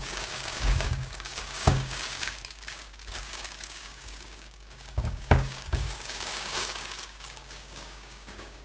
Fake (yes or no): yes